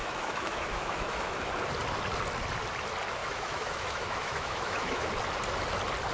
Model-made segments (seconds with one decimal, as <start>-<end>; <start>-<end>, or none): 0.0-1.5; 3.2-5.1